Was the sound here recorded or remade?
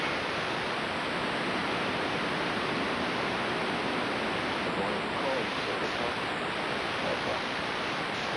recorded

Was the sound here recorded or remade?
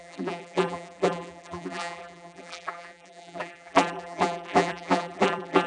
remade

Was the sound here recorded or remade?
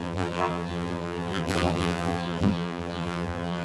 remade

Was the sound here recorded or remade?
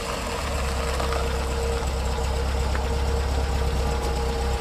recorded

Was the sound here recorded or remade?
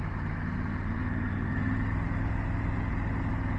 recorded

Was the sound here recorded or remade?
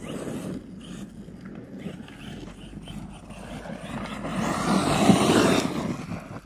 recorded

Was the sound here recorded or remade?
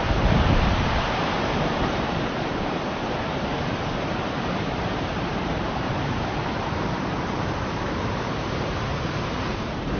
remade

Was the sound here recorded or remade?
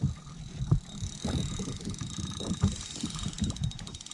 remade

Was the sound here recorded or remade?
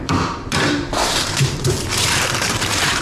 remade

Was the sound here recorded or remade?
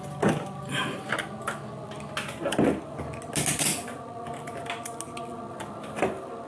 recorded